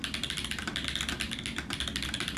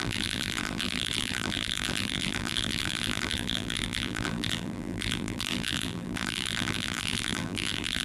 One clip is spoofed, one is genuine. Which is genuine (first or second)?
first